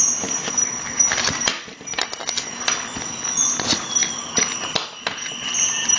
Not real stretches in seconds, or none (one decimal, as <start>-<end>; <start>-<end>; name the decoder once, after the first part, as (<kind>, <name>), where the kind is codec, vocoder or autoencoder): none